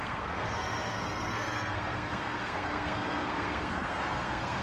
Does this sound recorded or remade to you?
remade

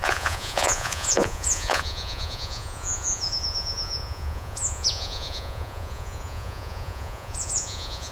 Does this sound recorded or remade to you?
remade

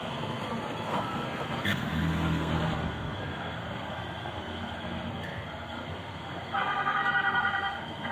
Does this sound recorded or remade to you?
remade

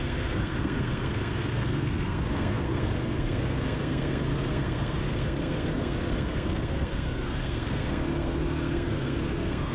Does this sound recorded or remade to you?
remade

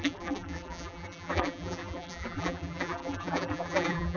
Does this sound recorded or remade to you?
remade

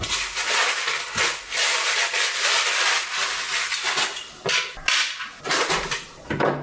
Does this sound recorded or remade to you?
recorded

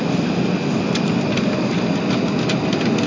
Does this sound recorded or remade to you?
recorded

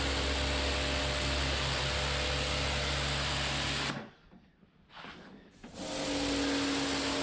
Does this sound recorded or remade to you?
recorded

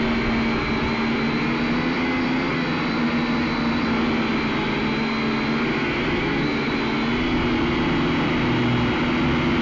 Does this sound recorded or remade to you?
recorded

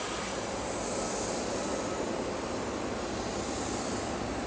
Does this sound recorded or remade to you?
recorded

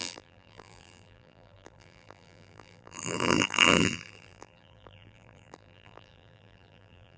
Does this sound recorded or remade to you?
remade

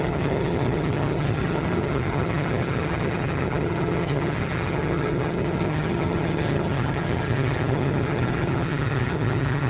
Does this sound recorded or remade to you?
remade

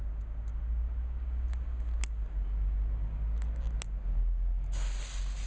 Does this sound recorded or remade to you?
recorded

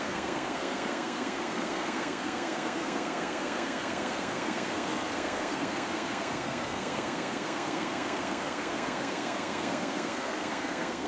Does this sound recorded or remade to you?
remade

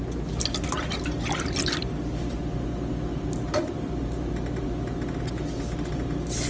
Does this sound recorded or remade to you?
recorded